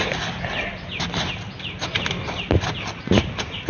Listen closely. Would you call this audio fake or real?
real